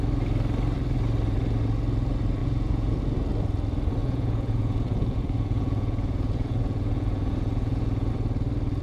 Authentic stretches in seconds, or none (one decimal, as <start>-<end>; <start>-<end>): 0.0-2.4; 3.0-4.0; 8.1-8.8

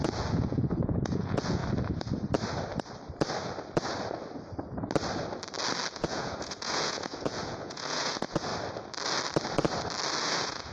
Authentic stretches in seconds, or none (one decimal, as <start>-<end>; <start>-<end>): 1.6-5.9; 8.5-10.2